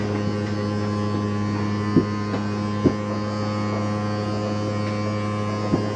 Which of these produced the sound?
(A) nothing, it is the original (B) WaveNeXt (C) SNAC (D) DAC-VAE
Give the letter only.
A